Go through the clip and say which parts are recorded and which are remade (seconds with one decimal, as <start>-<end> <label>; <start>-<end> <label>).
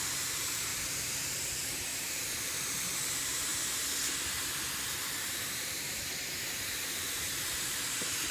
0.0-3.5 remade; 3.5-5.3 recorded; 5.3-8.3 remade